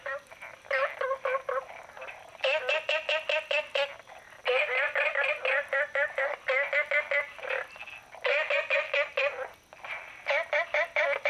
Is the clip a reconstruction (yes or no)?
no